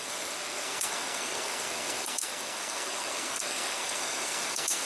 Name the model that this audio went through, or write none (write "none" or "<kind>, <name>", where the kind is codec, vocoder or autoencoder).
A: codec, SNAC